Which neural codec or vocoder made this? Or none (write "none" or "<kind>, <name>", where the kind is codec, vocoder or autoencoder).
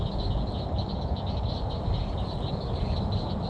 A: none